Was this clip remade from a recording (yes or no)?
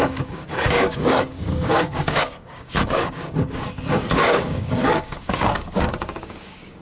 yes